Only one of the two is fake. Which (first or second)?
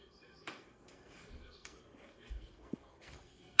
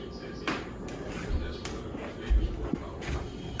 first